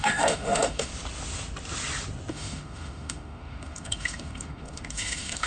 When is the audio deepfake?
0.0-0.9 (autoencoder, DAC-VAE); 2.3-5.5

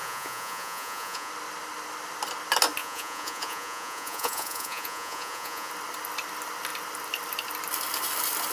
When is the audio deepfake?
0.0-1.3 (vocoder, Vocos); 2.8-5.7

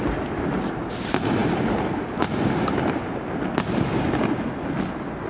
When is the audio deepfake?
none

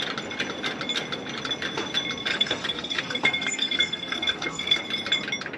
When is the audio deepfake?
2.3-4.8 (codec, SNAC)

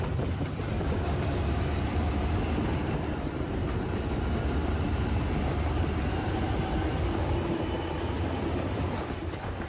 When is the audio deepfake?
0.0-3.6 (vocoder, BigVGAN v2); 4.3-9.7

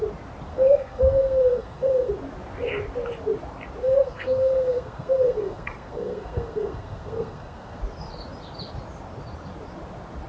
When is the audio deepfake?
0.5-2.1 (codec, SNAC); 3.8-7.8

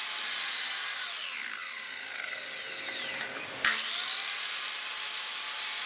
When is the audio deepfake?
none

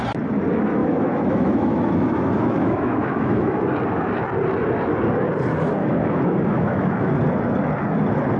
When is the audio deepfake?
0.8-3.6 (autoencoder, DAC-VAE); 5.8-7.1